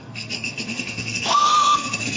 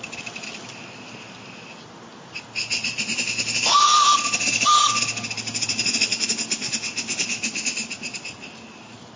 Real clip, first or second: second